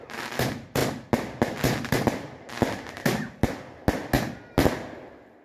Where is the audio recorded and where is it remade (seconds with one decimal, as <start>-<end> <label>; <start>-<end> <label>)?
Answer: 0.0-5.4 recorded